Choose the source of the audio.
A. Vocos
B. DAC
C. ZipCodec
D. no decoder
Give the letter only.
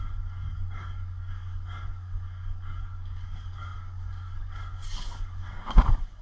B